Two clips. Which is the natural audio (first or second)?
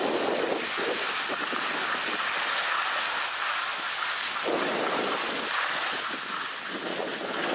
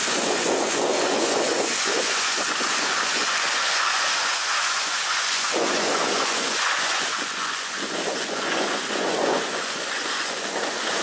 first